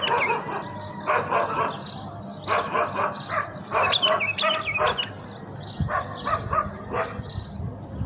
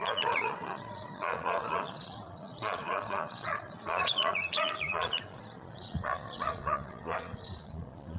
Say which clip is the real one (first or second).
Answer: first